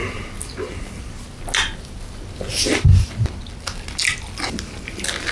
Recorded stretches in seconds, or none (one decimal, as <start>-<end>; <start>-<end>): 0.0-5.3